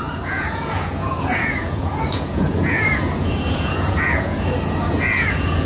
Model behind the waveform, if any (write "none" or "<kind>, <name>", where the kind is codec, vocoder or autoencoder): vocoder, Vocos